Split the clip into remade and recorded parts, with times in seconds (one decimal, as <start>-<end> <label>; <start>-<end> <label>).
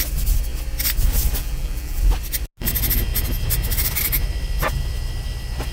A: 0.0-1.4 recorded; 1.4-2.0 remade; 2.0-5.7 recorded